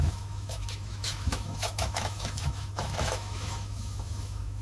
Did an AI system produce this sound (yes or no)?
yes